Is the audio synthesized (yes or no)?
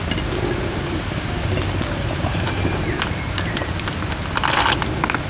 no